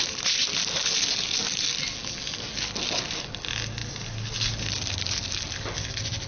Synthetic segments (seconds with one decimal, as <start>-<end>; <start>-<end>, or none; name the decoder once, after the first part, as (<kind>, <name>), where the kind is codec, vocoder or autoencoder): none